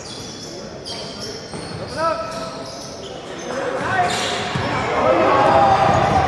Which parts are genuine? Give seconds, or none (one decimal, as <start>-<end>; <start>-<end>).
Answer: none